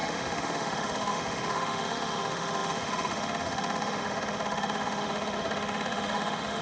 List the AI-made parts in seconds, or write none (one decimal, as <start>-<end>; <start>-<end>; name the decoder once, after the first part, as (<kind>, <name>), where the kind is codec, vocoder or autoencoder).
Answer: 0.0-6.6 (autoencoder, DAC-VAE)